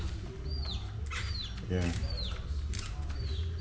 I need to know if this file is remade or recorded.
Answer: recorded